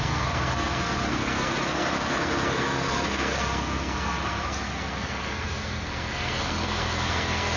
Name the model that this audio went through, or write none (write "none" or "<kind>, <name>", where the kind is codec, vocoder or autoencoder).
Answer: codec, SNAC